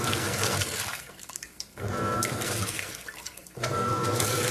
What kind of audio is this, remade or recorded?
remade